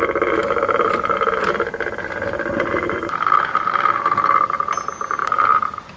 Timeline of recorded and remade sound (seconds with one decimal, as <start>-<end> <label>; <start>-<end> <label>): 0.0-0.4 recorded; 0.4-4.0 remade; 4.0-5.2 recorded; 5.2-6.0 remade

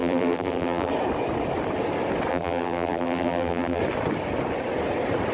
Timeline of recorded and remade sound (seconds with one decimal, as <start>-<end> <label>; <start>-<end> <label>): 0.0-0.9 remade; 0.9-2.3 recorded; 2.3-3.8 remade; 3.8-5.3 recorded

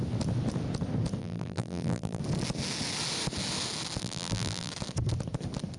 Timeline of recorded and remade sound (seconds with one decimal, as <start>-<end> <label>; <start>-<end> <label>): 0.0-1.2 recorded; 1.2-2.2 remade; 2.2-4.0 recorded; 4.0-4.7 remade; 4.7-5.8 recorded

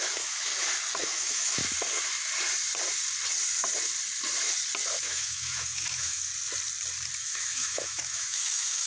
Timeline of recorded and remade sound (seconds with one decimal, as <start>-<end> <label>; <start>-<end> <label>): 0.0-0.5 remade; 0.5-1.0 recorded; 1.0-1.6 remade; 1.6-5.0 recorded; 5.0-6.3 remade; 6.3-7.2 recorded; 7.2-8.9 remade

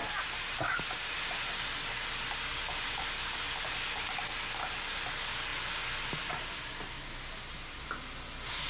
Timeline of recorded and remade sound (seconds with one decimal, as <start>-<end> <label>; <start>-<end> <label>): 0.0-8.7 recorded

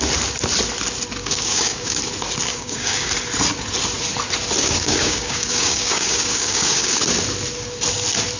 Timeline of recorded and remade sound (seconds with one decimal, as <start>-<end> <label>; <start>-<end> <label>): 0.0-1.2 recorded; 1.2-2.0 remade; 2.0-2.5 recorded; 2.5-3.1 remade; 3.1-4.6 recorded; 4.6-7.0 remade; 7.0-8.4 recorded

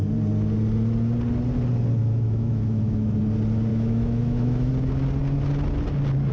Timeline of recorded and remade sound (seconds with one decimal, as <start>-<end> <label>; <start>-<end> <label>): 0.0-2.0 recorded; 2.0-3.2 remade; 3.2-3.7 recorded; 3.7-4.7 remade; 4.7-6.3 recorded

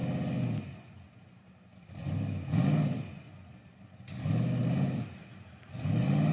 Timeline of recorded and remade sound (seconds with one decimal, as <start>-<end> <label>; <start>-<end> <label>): 0.0-6.3 recorded